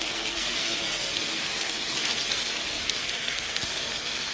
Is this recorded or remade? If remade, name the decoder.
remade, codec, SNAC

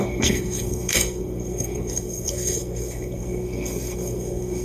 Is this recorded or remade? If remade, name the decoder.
remade, codec, SNAC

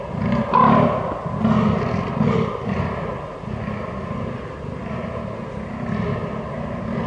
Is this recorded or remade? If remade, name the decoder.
recorded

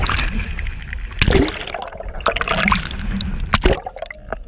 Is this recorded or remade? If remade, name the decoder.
recorded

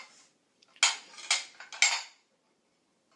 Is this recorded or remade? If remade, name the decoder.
recorded